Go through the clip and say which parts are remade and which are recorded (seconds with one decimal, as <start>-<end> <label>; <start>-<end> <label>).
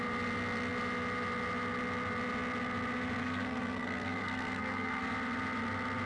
0.0-3.2 recorded; 3.2-5.0 remade; 5.0-6.1 recorded